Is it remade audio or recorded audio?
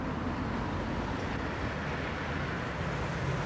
recorded